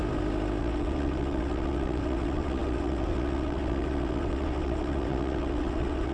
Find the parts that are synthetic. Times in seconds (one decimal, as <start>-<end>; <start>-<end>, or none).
0.6-6.1